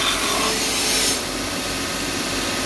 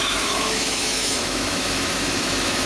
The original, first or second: first